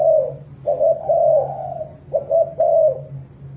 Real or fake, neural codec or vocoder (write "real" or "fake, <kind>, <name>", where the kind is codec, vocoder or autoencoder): real